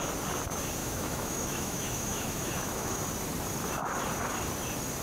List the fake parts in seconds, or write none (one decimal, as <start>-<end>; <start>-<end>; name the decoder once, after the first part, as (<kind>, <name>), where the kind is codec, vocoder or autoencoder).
0.8-3.0 (autoencoder, DAC-VAE)